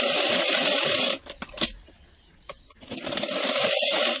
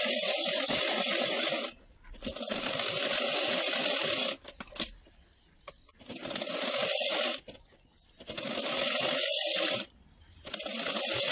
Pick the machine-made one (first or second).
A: first